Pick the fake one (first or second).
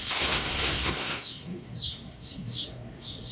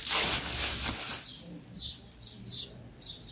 first